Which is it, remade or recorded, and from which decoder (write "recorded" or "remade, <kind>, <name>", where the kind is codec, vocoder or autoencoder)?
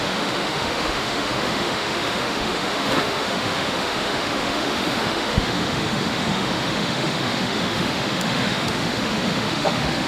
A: remade, autoencoder, DAC-VAE